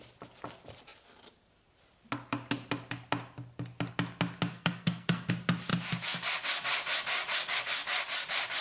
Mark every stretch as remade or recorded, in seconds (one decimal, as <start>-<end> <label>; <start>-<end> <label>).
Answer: 0.0-4.5 recorded; 4.5-5.3 remade; 5.3-8.6 recorded